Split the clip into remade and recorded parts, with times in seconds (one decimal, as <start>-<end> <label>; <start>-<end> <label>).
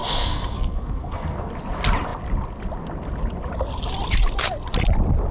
0.0-1.5 remade; 1.5-5.3 recorded